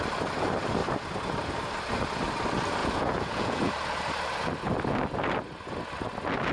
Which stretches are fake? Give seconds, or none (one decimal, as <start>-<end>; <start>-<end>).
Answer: 2.8-3.7